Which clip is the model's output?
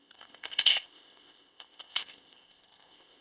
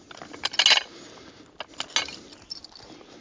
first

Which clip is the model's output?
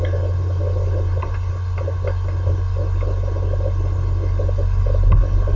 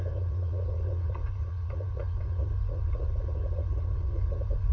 second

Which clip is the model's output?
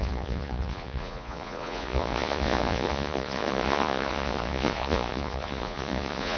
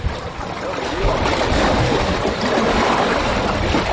first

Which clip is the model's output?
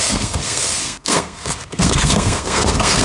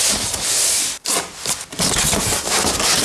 first